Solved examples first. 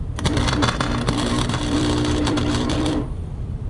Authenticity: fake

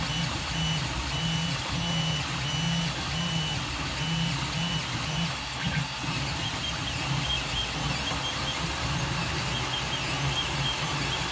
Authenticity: real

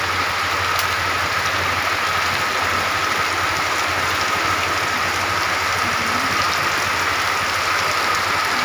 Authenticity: real